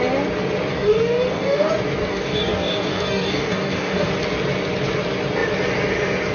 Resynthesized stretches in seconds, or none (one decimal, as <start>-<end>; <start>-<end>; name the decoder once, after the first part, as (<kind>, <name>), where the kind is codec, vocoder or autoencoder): 0.7-1.7 (codec, DAC); 2.1-4.1